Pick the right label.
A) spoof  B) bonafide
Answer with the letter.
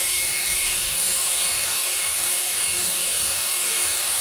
A